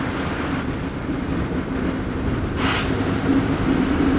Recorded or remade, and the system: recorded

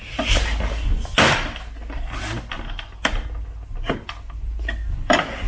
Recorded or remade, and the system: recorded